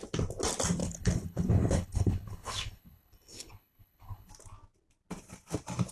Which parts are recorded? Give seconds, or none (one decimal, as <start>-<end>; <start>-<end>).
0.0-0.8; 4.3-5.9